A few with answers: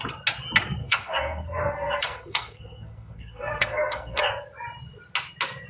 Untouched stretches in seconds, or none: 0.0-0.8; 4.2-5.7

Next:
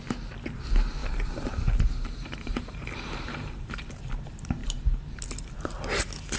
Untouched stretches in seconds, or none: 0.0-1.0; 4.0-6.4

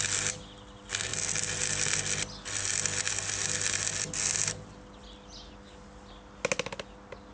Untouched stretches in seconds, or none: 0.0-7.3